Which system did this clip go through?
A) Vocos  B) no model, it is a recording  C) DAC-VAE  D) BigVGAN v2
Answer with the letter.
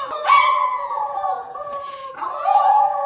A